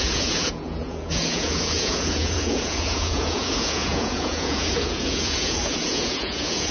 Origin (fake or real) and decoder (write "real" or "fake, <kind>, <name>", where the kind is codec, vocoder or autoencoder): fake, vocoder, Vocos